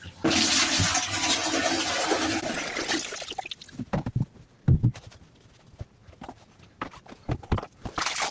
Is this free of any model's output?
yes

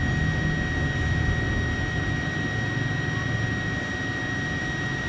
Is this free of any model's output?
yes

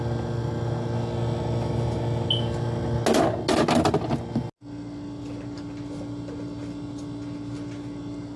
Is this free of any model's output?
yes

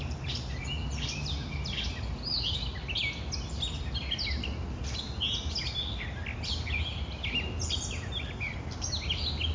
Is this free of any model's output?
yes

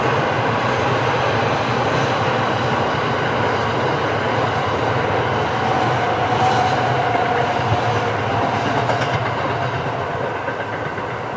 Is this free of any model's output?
yes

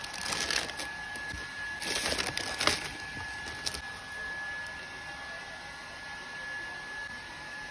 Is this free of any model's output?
yes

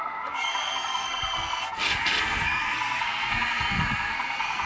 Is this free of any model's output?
no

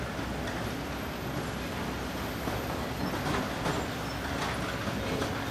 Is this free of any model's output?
yes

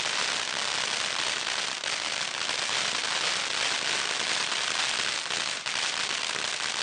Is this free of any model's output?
yes